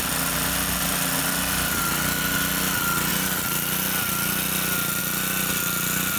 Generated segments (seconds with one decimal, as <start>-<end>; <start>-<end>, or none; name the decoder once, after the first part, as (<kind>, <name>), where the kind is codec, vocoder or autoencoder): none

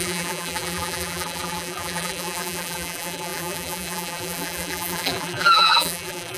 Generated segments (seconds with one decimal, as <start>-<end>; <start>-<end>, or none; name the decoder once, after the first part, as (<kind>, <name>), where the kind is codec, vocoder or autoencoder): 0.0-6.4 (vocoder, BigVGAN v2)

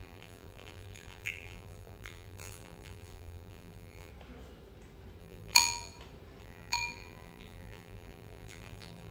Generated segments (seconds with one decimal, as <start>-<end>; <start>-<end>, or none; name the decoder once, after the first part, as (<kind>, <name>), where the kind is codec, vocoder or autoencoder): 0.0-4.1 (vocoder, BigVGAN v2); 5.2-5.9; 6.4-9.1